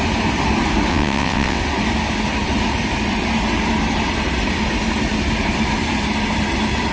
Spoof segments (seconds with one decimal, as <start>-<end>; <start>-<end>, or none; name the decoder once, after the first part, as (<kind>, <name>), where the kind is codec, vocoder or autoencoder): 0.9-1.6 (vocoder, WaveNeXt)